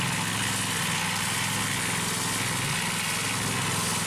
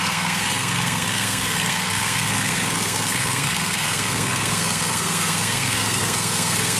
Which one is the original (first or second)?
first